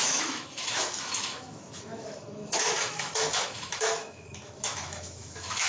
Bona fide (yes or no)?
no